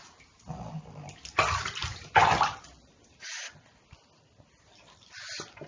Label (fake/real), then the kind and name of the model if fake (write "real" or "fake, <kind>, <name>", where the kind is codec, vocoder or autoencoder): real